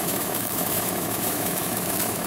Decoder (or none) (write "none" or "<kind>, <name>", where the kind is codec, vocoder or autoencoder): autoencoder, DAC-VAE